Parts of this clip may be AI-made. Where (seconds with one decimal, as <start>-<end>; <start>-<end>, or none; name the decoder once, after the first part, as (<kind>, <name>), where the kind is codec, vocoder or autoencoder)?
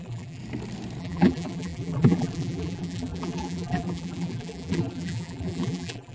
0.0-0.4 (vocoder, BigVGAN v2); 1.0-6.1